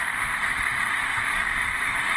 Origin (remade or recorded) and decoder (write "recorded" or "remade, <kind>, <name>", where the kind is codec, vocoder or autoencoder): remade, autoencoder, DAC-VAE